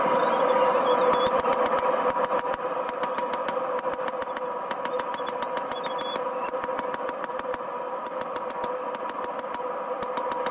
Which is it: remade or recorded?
recorded